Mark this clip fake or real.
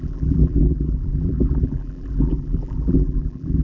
fake